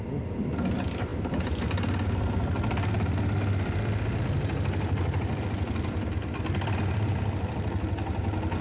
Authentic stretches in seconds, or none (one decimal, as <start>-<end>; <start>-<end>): 0.0-8.6